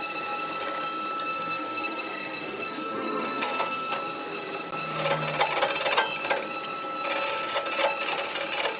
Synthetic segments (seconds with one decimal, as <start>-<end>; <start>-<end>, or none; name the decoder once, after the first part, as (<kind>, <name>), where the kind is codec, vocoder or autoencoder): 1.3-3.9 (codec, SNAC)